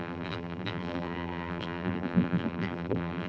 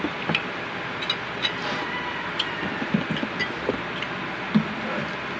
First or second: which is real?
second